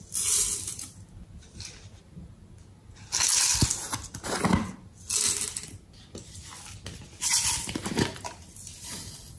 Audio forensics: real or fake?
real